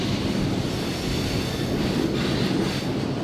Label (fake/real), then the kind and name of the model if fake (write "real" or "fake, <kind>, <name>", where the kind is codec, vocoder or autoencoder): real